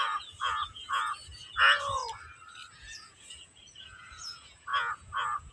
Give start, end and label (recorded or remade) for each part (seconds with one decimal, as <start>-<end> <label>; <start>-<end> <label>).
0.0-2.0 remade; 2.0-2.7 recorded; 2.7-5.5 remade